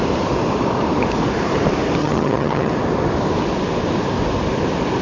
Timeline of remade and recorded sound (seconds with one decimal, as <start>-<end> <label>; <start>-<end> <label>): 0.0-2.0 recorded; 2.0-2.7 remade; 2.7-5.0 recorded